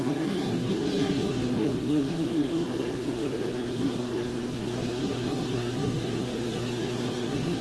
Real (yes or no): no